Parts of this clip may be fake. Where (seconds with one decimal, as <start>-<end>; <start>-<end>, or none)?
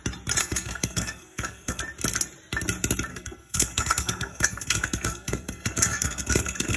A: 0.4-1.8; 3.1-6.8